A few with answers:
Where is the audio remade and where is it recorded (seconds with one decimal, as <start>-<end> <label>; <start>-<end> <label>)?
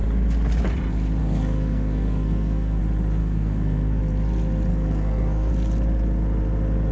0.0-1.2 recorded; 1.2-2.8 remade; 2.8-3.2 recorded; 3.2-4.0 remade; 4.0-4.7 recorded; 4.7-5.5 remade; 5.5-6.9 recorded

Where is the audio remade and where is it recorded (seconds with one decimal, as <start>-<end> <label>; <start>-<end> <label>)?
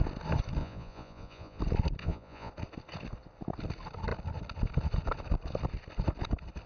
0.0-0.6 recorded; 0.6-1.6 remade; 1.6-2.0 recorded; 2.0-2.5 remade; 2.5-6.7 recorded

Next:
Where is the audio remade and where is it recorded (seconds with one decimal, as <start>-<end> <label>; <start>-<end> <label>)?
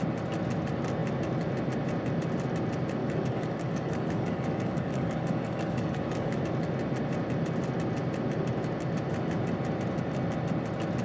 0.0-3.0 recorded; 3.0-6.4 remade; 6.4-11.0 recorded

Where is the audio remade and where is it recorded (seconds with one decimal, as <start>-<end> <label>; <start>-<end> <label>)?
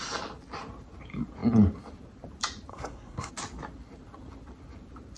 0.0-2.7 recorded; 2.7-3.3 remade; 3.3-5.2 recorded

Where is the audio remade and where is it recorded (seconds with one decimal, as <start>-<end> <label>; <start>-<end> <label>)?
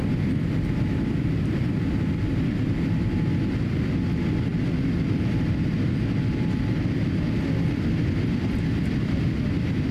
0.0-9.9 recorded